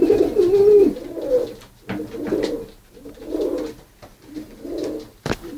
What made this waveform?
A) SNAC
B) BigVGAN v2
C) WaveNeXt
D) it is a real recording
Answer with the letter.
D